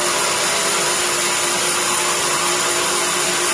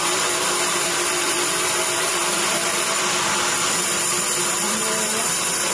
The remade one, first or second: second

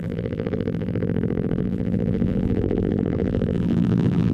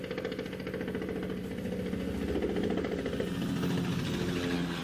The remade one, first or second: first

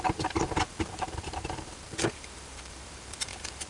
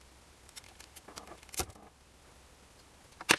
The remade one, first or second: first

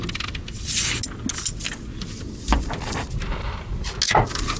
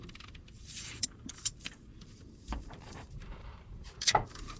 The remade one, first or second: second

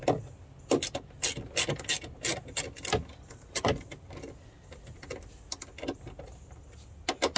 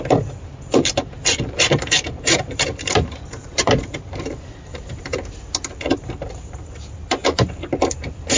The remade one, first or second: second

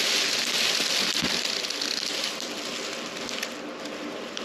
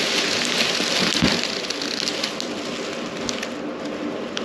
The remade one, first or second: first